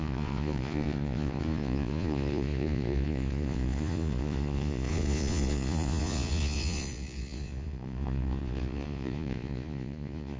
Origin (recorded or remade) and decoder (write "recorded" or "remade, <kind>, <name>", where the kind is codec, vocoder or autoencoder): remade, vocoder, Vocos